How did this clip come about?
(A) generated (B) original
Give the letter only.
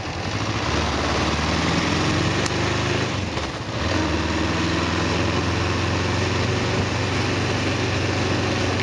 B